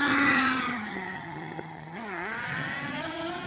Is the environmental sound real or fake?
fake